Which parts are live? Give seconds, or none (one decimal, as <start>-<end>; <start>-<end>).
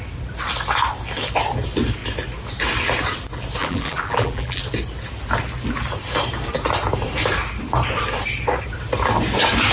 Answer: 0.0-3.6; 4.6-9.7